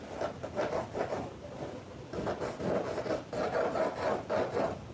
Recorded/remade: recorded